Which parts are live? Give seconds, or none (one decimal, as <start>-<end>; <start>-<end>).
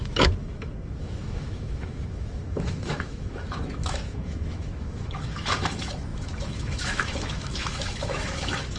none